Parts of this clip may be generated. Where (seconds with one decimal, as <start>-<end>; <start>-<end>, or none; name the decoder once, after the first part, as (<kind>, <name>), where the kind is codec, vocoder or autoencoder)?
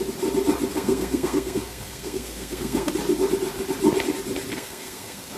0.7-2.9 (codec, SNAC); 4.5-5.4